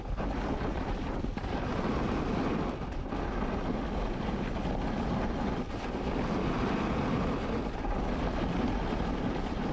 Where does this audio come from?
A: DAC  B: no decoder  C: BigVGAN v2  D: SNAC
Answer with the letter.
B